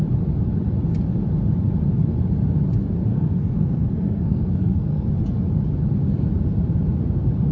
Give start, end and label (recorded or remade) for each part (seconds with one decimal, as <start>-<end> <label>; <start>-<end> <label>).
0.0-3.1 recorded; 3.1-5.1 remade; 5.1-7.5 recorded